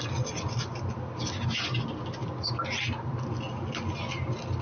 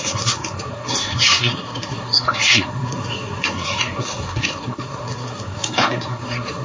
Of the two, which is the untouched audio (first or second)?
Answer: first